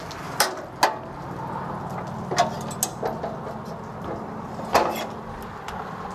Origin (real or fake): real